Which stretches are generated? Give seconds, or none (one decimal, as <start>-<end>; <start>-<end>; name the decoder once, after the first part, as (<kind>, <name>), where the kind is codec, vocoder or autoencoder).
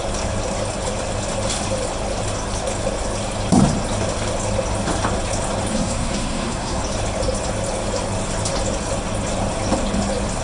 5.7-6.8 (codec, SNAC)